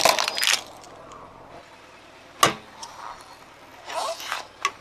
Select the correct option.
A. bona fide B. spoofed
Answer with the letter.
A